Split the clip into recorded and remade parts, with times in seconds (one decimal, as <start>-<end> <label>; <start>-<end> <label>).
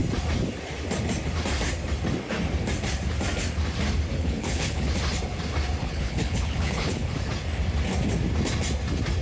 0.0-4.2 recorded; 4.2-4.9 remade; 4.9-5.8 recorded; 5.8-7.3 remade; 7.3-9.2 recorded